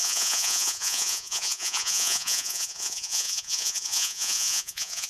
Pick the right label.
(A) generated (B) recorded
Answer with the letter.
A